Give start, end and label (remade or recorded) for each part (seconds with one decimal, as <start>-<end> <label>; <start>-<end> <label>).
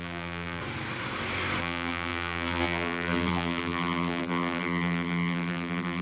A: 0.0-0.6 remade; 0.6-1.6 recorded; 1.6-6.0 remade